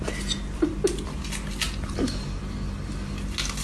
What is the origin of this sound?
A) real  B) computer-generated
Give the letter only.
A